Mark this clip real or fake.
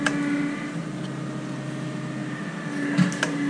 real